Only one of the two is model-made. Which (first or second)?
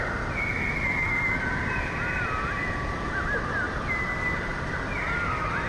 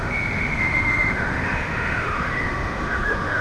second